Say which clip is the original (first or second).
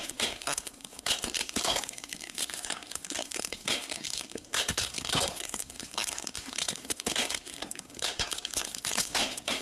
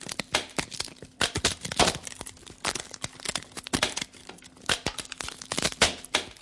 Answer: second